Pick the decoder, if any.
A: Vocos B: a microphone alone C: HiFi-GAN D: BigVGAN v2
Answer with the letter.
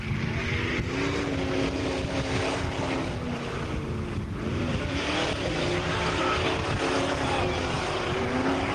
B